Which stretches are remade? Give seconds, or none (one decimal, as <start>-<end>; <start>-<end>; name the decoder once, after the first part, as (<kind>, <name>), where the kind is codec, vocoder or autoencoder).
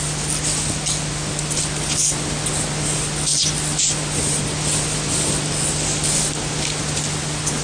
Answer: none